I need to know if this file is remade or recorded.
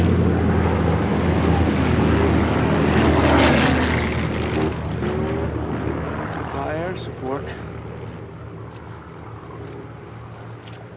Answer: recorded